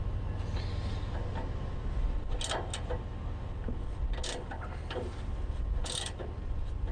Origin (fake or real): real